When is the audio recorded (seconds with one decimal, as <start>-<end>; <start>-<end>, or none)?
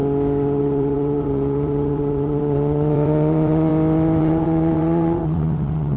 0.0-0.6; 3.7-4.2